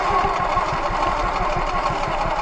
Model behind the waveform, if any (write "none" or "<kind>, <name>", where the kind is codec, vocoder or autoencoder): none